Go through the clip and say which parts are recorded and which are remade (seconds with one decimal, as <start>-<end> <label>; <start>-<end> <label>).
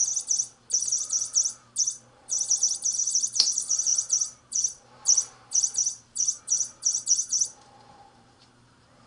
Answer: 0.0-0.9 recorded; 0.9-1.3 remade; 1.3-1.8 recorded; 1.8-9.1 remade